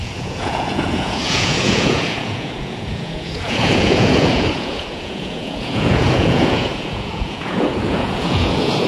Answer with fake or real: fake